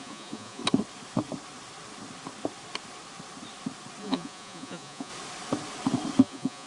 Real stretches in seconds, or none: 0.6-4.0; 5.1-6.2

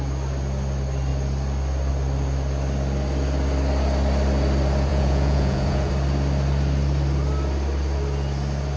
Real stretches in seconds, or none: 0.0-4.9; 5.9-8.8

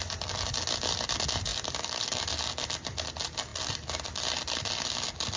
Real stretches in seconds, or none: 0.0-5.4